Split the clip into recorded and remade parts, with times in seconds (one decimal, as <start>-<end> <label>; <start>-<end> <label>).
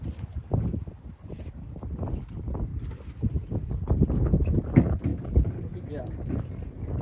0.0-7.0 recorded